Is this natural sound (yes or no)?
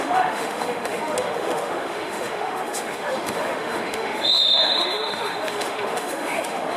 no